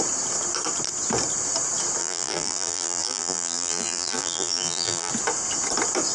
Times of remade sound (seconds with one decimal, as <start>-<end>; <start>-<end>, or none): 2.0-5.1